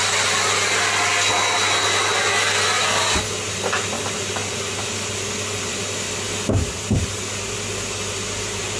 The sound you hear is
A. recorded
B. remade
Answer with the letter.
A